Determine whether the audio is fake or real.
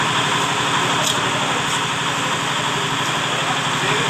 real